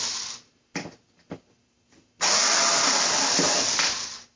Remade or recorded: recorded